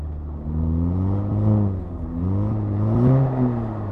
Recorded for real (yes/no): yes